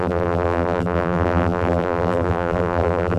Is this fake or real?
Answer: fake